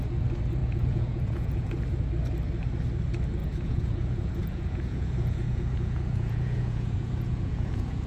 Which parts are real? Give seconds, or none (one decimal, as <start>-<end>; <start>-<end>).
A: 0.0-0.6; 1.7-3.4